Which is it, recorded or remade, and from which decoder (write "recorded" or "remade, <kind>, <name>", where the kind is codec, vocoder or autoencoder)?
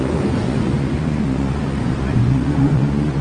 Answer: remade, vocoder, Vocos